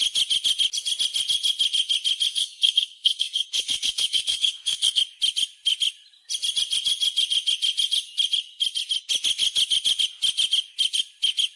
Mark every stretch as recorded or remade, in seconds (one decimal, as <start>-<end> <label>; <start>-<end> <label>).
0.0-2.3 recorded; 2.3-5.0 remade; 5.0-11.6 recorded